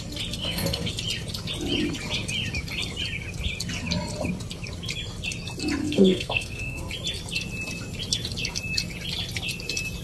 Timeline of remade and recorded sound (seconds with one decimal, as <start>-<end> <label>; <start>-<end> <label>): 0.0-0.4 recorded; 0.4-0.9 remade; 0.9-5.8 recorded; 5.8-6.9 remade; 6.9-10.0 recorded